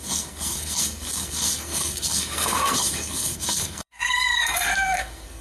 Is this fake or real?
fake